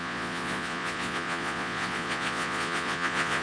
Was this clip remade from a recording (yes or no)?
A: yes